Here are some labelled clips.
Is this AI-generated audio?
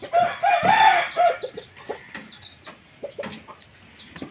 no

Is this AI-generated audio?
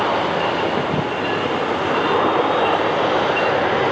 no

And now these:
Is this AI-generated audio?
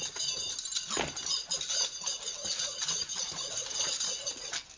no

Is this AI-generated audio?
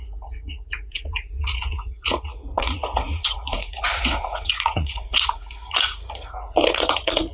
yes